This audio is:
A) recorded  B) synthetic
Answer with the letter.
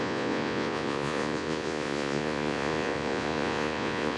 B